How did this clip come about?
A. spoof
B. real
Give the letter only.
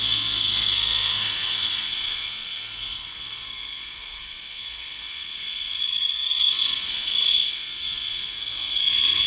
A